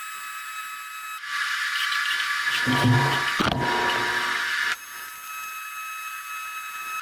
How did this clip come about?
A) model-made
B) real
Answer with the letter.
B